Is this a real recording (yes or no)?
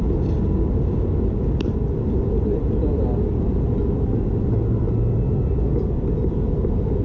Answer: yes